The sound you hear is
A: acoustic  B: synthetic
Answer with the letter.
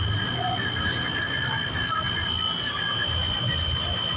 A